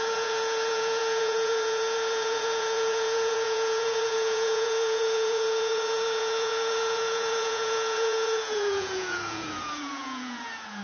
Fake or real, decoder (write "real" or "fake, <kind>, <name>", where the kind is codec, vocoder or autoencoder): fake, vocoder, Vocos